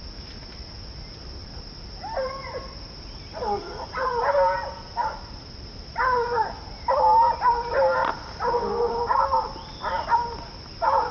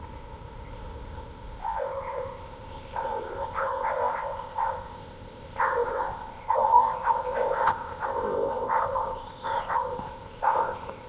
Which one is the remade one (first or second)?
second